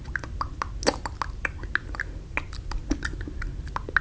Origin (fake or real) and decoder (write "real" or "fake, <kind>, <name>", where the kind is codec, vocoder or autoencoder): real